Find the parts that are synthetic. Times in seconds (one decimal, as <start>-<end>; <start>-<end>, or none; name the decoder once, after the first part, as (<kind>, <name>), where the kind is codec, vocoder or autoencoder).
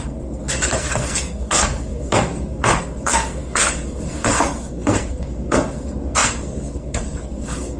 0.0-7.8 (codec, SNAC)